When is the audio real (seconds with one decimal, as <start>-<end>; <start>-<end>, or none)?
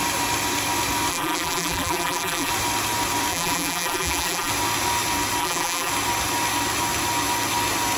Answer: 0.0-1.1; 2.5-3.3; 4.5-5.4; 5.9-8.0